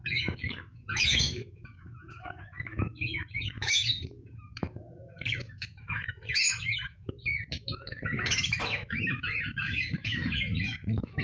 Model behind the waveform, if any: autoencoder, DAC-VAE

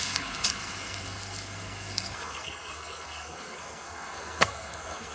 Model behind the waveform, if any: codec, SNAC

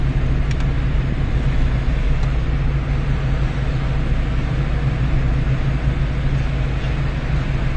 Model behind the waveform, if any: none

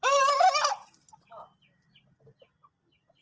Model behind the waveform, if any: none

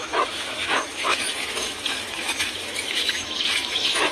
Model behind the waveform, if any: autoencoder, DAC-VAE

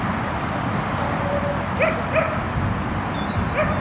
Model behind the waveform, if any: none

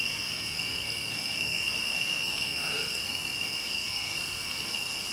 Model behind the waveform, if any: codec, SNAC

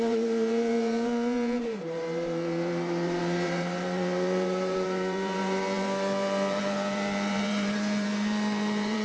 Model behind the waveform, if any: vocoder, BigVGAN v2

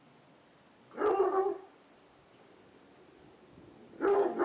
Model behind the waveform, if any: none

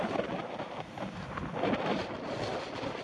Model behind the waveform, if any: none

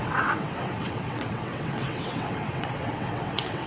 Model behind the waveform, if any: vocoder, WaveNeXt